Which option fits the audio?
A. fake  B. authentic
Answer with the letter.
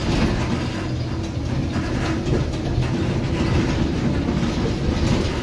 B